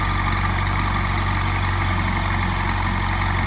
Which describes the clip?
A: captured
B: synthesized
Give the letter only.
A